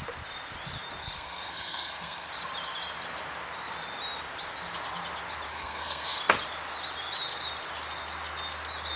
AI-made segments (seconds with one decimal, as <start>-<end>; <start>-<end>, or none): 1.0-2.3; 5.5-6.2